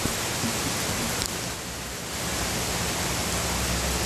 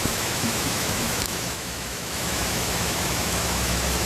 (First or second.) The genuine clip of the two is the first